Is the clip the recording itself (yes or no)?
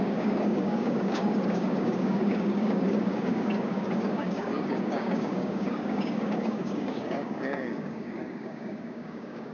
no